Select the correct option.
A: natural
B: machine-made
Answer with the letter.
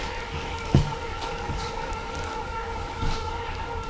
B